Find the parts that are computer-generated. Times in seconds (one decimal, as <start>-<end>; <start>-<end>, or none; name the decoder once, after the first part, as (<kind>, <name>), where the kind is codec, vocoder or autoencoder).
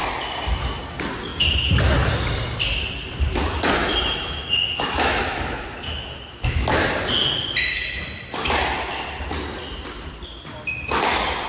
3.8-6.8 (autoencoder, DAC-VAE)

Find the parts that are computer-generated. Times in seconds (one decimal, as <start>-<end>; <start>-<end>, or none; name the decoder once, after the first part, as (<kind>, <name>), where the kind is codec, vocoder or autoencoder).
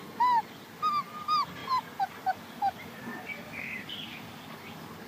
3.1-5.1 (codec, DAC)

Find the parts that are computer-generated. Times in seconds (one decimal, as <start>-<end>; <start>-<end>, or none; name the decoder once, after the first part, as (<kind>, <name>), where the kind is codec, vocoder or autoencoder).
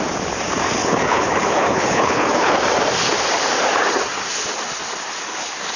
0.8-2.6 (codec, HILCodec)